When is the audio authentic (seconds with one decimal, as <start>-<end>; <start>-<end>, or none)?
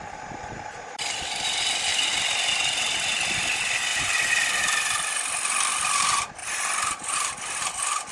0.0-8.1